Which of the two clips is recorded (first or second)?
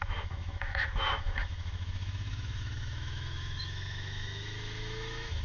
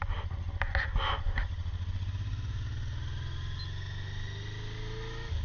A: second